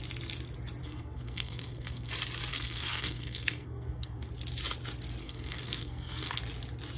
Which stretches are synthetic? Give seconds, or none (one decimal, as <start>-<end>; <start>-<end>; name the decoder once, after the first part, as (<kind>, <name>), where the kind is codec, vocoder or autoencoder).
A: 0.8-2.1 (codec, SNAC); 2.5-4.3; 5.2-6.4